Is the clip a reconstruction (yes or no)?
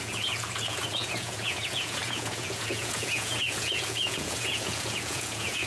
yes